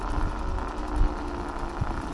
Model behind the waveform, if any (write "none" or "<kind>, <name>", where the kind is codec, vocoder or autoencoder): none